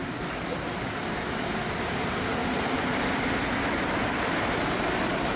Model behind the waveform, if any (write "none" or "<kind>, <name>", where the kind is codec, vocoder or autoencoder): none